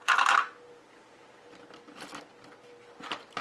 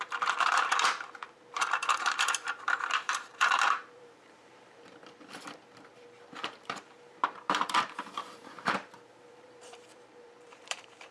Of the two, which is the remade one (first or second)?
second